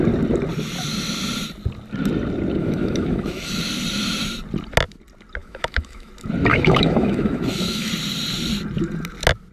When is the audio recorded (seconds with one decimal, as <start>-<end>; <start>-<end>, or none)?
0.0-2.6; 3.5-5.4; 6.1-6.5; 7.9-9.5